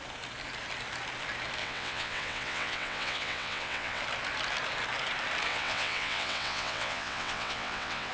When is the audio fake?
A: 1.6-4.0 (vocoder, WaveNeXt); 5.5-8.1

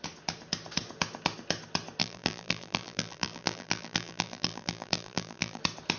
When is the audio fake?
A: 2.0-5.6 (vocoder, BigVGAN v2)

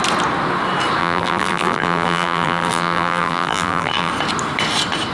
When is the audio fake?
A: 1.0-4.1 (vocoder, BigVGAN v2)

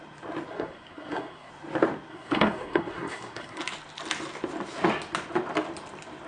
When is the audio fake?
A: 0.5-1.5 (codec, SNAC); 2.1-3.6